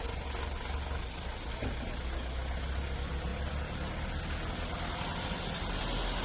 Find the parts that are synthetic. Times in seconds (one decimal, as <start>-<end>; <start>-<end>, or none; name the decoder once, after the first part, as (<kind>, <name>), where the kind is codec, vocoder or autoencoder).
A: none

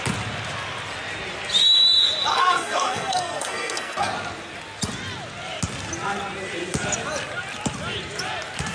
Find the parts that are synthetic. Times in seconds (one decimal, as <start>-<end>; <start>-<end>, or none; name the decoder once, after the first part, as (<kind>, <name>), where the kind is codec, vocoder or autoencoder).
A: 2.3-4.1 (codec, SNAC)

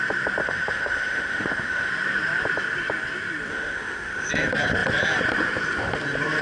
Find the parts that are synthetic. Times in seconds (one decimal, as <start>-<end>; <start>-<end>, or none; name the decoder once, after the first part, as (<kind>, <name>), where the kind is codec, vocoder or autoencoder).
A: 0.4-1.9 (autoencoder, DAC-VAE); 3.5-4.3

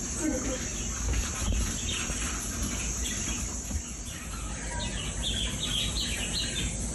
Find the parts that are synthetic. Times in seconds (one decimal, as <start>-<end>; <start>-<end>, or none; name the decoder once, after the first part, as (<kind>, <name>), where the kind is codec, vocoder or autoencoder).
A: none

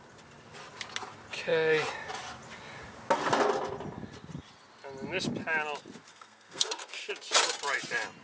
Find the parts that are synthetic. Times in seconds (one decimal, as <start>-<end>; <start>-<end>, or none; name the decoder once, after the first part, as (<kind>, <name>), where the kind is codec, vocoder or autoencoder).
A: 6.1-7.1 (codec, SNAC)

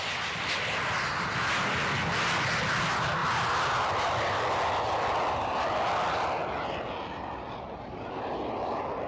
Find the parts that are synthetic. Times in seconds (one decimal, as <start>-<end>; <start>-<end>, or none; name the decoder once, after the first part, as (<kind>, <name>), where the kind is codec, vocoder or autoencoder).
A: none

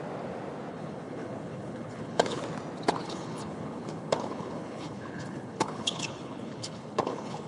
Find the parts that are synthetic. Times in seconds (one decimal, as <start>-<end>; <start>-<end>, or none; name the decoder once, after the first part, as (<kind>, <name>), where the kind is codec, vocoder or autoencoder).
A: 0.7-2.4 (codec, HILCodec); 3.0-7.5

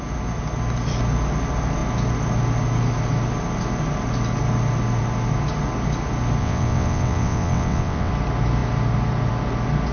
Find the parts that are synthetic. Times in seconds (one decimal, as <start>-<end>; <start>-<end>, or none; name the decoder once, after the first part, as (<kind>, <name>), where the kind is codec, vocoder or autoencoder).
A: 6.4-8.1 (vocoder, WaveNeXt)